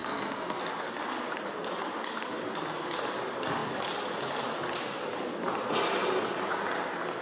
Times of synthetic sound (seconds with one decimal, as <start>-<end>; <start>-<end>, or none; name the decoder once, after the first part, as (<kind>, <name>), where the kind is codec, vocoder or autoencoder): 0.0-0.6 (codec, SNAC)